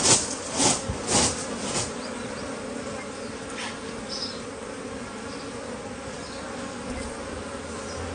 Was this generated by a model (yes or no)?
no